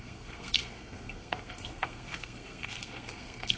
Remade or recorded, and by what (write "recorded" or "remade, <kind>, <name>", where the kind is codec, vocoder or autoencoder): remade, codec, SNAC